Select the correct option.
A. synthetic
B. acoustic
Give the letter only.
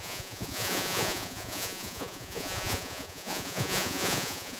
A